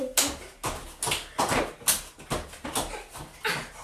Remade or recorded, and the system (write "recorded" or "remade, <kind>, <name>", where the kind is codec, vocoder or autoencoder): recorded